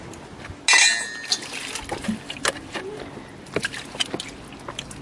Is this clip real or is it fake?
real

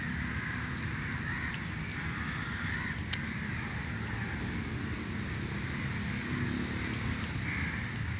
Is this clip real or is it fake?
real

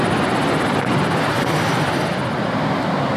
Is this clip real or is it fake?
real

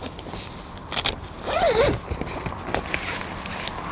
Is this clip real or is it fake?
real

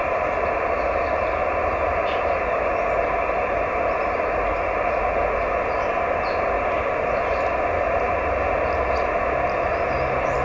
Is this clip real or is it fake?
real